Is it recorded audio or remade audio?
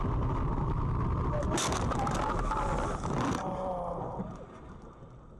recorded